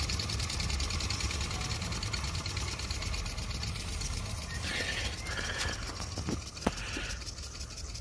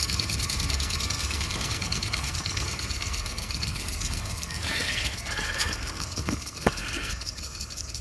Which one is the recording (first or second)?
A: first